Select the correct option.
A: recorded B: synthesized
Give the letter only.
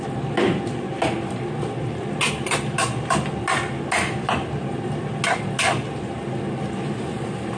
A